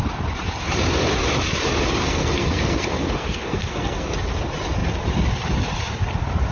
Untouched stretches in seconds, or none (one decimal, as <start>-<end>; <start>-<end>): 0.0-2.0; 4.1-6.5